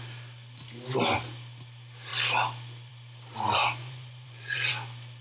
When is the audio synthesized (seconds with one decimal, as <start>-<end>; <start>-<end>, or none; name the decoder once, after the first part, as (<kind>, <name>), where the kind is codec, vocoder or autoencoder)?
3.8-4.7 (vocoder, Vocos)